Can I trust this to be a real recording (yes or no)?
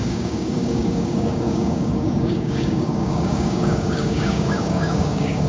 no